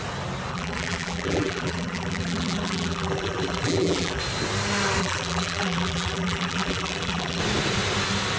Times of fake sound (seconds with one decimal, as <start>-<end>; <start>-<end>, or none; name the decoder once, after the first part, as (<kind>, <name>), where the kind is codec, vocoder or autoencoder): 0.5-4.2 (vocoder, BigVGAN v2); 5.0-7.4